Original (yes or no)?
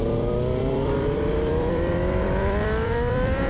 no